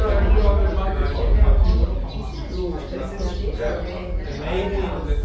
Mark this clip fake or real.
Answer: real